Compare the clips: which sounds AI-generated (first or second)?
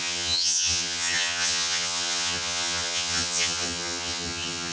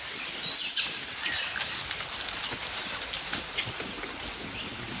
first